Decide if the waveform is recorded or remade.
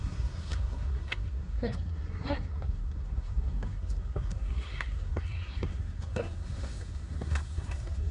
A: remade